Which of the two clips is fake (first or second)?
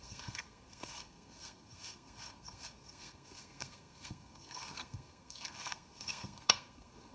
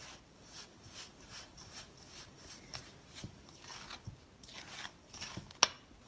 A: first